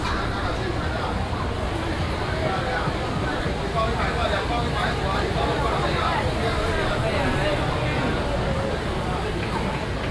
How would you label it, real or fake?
real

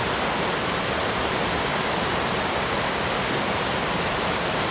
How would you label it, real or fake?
real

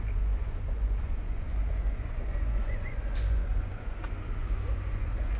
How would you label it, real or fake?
fake